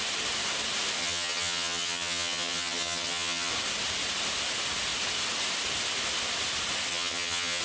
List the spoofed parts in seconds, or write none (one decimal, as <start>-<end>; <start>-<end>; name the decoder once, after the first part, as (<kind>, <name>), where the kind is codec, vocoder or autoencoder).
1.0-3.5 (vocoder, HiFi-GAN); 6.9-7.6